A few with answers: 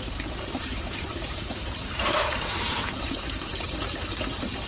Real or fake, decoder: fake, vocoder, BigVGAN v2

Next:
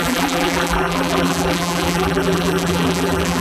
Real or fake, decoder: fake, vocoder, BigVGAN v2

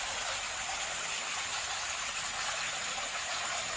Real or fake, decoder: real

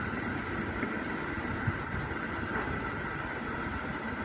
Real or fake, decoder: fake, vocoder, BigVGAN v2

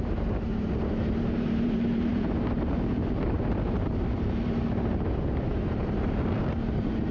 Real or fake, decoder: fake, vocoder, BigVGAN v2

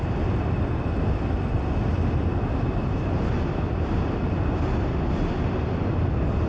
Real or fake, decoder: real